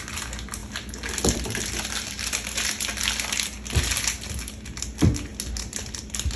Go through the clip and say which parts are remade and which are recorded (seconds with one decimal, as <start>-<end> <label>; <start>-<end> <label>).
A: 0.0-6.4 recorded